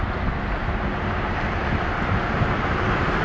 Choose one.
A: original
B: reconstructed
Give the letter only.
A